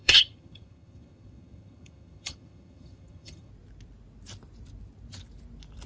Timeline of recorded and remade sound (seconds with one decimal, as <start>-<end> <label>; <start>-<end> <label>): 0.0-3.5 remade; 3.5-5.9 recorded